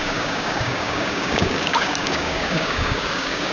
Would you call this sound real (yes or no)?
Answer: no